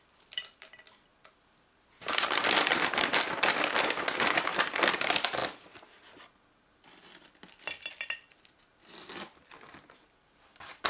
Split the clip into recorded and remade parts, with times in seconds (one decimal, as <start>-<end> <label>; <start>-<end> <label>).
0.0-1.1 remade; 1.1-3.1 recorded; 3.1-4.5 remade; 4.5-5.0 recorded; 5.0-7.4 remade; 7.4-7.9 recorded; 7.9-10.9 remade